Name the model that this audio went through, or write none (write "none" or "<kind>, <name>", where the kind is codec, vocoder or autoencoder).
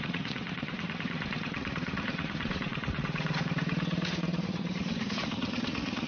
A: vocoder, Vocos